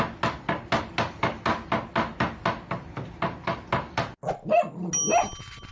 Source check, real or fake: real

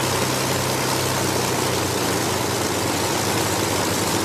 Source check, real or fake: real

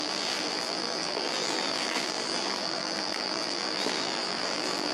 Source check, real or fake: fake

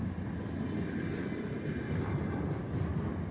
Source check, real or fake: real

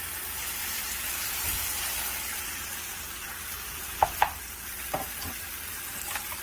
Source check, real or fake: real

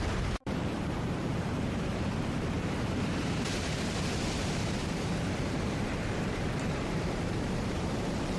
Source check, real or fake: fake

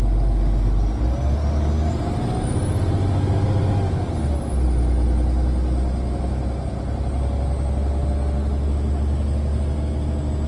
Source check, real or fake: real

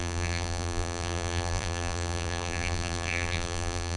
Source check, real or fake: fake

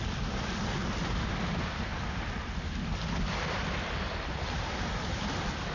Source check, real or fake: real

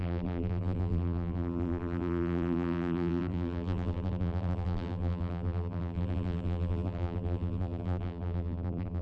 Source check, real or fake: fake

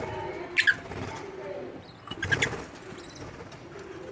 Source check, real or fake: real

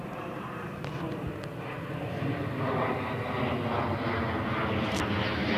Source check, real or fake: real